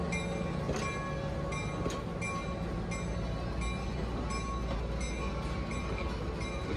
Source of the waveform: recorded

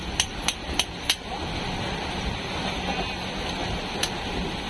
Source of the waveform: remade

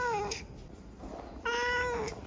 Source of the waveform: recorded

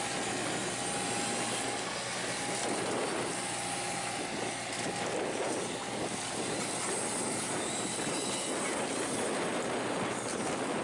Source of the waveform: recorded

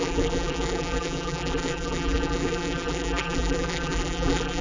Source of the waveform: remade